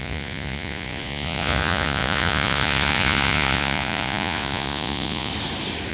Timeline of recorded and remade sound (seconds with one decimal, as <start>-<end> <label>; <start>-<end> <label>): 0.0-5.3 remade; 5.3-5.9 recorded